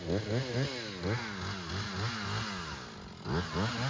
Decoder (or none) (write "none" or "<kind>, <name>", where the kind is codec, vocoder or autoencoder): none